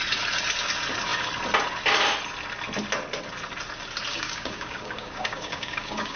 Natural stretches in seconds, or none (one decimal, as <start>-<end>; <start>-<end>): 0.0-4.1